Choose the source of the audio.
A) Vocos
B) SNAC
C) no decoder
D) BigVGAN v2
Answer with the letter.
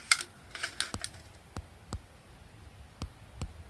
C